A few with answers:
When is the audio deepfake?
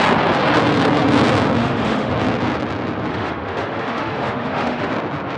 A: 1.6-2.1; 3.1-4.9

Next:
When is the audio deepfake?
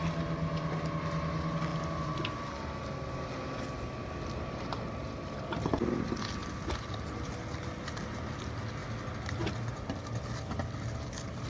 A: none